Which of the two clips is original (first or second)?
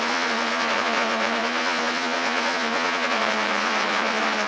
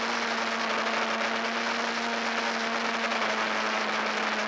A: second